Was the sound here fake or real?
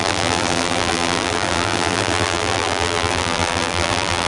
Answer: fake